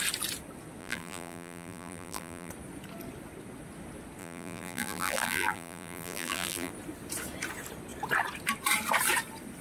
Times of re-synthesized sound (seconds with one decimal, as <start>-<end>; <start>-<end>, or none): 0.8-2.5; 4.2-6.7